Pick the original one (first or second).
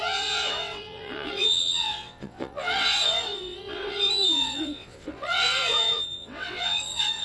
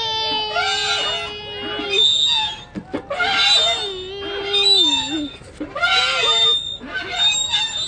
second